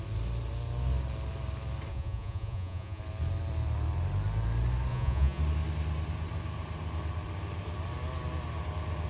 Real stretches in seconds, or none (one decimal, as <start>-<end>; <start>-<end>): 0.0-1.9; 3.0-4.9; 5.4-9.1

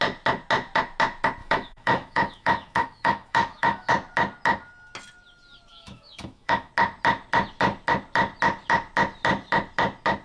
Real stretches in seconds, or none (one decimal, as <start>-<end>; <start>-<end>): 0.0-1.4; 3.9-5.7; 6.7-10.2

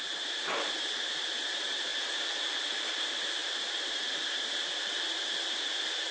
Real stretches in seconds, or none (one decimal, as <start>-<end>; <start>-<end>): 1.9-2.7

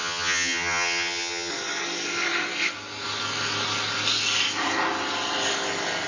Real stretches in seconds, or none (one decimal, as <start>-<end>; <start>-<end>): 1.5-6.1

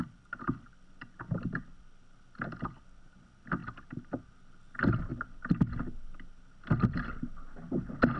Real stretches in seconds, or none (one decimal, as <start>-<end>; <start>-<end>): 0.0-8.2

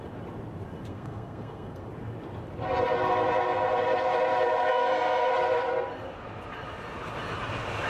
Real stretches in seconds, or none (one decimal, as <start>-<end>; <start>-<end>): 0.0-0.9; 1.9-4.7; 5.3-7.9

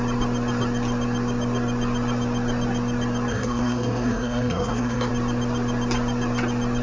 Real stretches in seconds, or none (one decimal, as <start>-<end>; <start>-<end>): 0.0-3.3; 5.1-6.8